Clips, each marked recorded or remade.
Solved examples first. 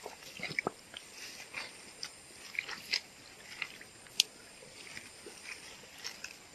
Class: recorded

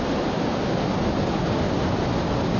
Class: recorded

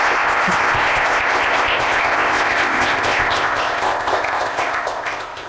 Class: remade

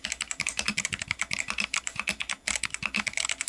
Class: recorded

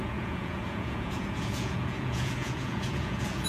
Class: remade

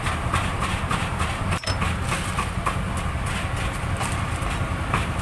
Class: recorded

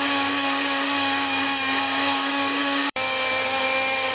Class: remade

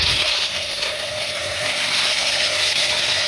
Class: remade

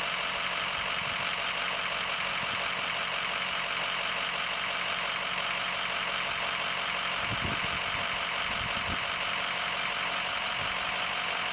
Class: recorded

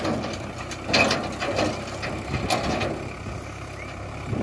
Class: recorded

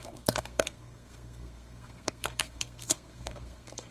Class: remade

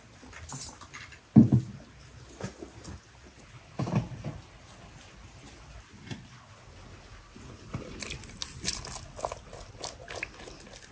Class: recorded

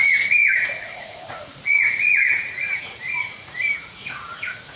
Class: remade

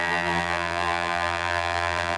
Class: remade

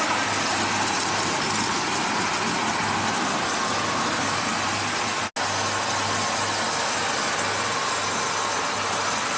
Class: recorded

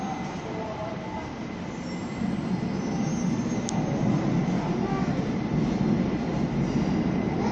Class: recorded